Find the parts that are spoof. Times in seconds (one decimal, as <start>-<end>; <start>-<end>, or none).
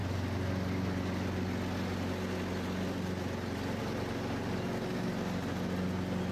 none